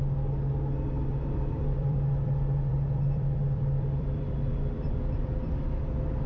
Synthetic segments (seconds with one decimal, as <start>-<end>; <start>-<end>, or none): 1.1-4.9